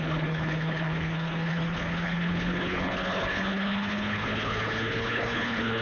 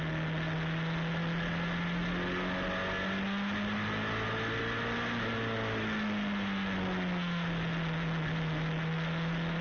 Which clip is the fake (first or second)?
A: first